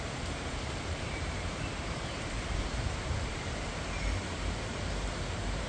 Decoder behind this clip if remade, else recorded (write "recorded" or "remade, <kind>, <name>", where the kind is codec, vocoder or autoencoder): remade, vocoder, BigVGAN v2